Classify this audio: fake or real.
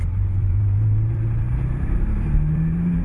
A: fake